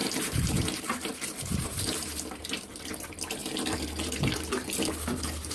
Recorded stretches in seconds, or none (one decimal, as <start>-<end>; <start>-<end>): 0.9-5.5